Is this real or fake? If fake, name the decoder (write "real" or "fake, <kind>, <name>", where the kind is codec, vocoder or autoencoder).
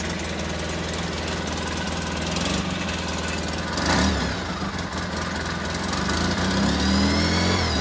real